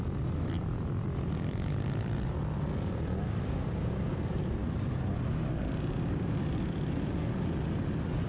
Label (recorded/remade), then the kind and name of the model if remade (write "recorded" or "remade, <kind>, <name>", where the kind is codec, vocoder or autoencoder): recorded